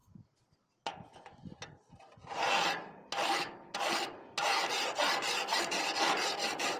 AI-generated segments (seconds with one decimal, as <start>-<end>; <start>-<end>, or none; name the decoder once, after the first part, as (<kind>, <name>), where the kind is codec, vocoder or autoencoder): none